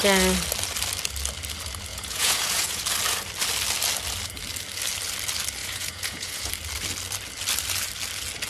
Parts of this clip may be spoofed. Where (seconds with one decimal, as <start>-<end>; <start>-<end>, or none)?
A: 1.9-2.8; 5.6-6.5